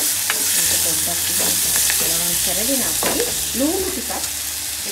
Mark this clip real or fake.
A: real